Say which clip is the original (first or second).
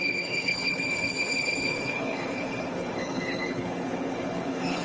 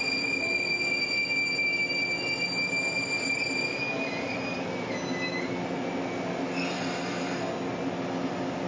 second